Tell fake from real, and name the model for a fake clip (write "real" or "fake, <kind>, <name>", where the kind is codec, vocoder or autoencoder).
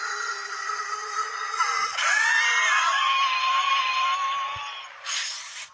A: real